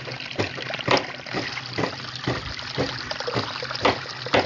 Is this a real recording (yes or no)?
yes